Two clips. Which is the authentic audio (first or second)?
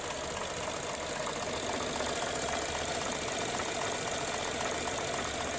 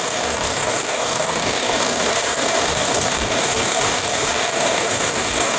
first